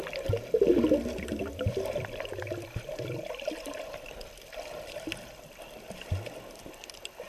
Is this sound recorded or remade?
recorded